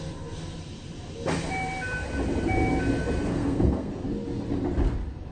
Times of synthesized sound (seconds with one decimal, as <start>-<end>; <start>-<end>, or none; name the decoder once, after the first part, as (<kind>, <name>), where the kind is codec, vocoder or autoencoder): 3.3-3.9 (codec, SNAC)